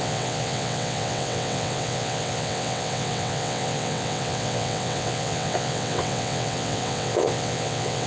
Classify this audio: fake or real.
fake